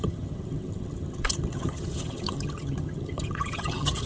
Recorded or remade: remade